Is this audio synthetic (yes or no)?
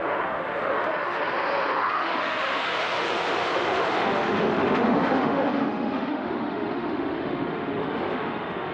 yes